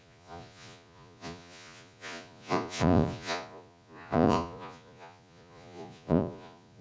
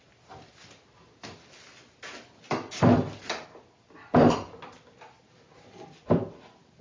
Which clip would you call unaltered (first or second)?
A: second